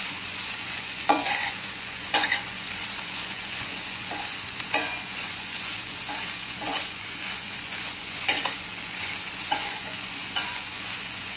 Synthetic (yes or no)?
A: yes